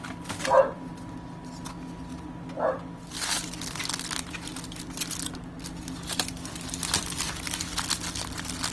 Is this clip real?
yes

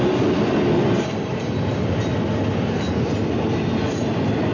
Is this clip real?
yes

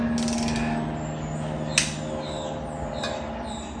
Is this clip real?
yes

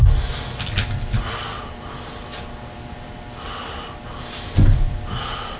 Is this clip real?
yes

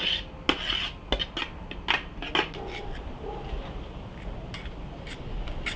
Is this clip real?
yes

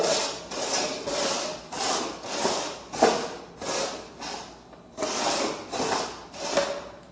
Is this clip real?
yes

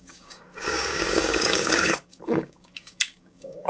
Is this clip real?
no